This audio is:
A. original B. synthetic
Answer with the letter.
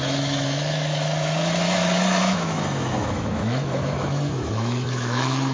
B